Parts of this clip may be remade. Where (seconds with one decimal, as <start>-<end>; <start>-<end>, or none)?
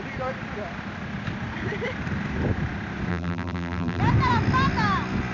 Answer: 3.1-4.0